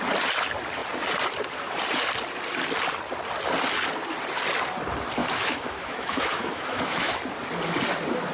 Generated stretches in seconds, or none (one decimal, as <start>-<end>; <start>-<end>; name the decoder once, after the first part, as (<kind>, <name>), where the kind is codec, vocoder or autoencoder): 5.2-7.2 (autoencoder, DAC-VAE)

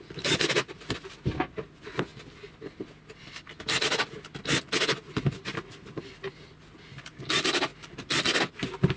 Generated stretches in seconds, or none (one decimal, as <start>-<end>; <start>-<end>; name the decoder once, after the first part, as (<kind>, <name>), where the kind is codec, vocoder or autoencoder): none

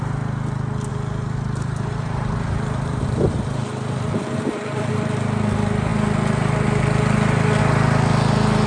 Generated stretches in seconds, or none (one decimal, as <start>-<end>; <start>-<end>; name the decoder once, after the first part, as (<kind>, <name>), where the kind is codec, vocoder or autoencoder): 0.9-4.9 (vocoder, BigVGAN v2)

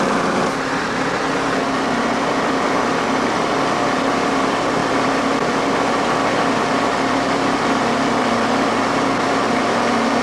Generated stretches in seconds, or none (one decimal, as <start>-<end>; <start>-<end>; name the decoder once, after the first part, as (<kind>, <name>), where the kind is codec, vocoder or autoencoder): 0.0-10.2 (vocoder, BigVGAN v2)

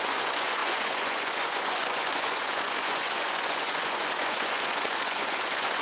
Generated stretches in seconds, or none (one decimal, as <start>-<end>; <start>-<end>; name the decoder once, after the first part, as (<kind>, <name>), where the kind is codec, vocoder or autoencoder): 0.0-5.8 (vocoder, Vocos)